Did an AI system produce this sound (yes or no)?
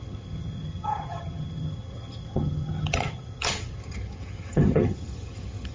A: yes